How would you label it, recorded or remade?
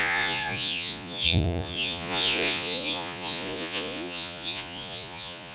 remade